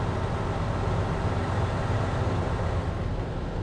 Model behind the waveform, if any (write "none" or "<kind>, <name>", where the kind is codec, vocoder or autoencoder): none